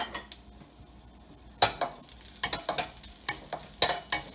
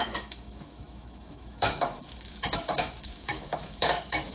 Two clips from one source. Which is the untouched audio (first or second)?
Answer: first